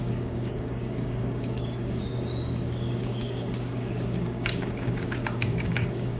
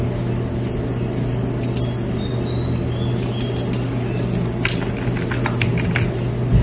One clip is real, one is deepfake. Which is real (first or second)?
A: second